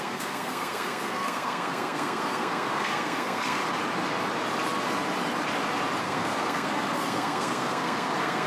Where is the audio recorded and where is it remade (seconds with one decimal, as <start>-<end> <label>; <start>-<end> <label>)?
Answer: 0.0-3.6 remade; 3.6-6.0 recorded; 6.0-8.5 remade